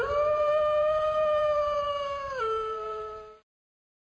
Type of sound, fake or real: fake